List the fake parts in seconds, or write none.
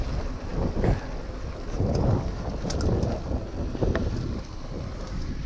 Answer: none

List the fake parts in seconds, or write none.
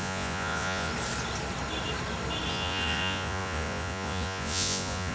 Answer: 0.0-0.9 (vocoder, Vocos); 2.5-5.1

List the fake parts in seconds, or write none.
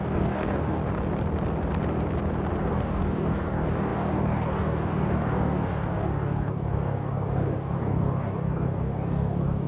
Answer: 0.0-0.8 (codec, DAC); 2.6-9.7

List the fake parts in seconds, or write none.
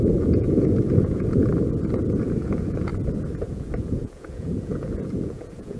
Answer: 0.0-1.5 (vocoder, Vocos); 2.2-2.9; 3.4-5.8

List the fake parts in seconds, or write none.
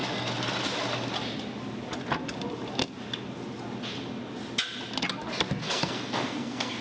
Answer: 5.6-6.8 (codec, SNAC)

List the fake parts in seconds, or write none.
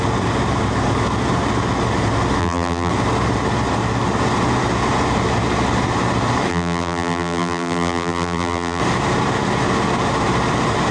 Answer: 2.4-2.9 (vocoder, BigVGAN v2); 6.5-8.8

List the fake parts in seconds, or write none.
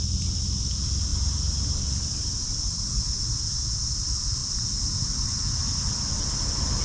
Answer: none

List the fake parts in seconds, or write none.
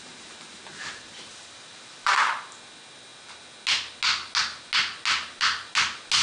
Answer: 0.7-2.2 (vocoder, BigVGAN v2)